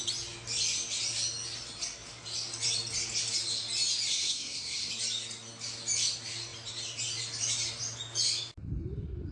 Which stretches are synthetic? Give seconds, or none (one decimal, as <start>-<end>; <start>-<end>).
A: 4.1-4.9